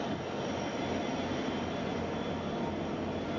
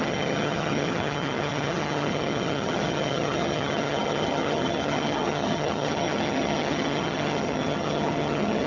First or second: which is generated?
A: second